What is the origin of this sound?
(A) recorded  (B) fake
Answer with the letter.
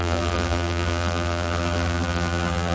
B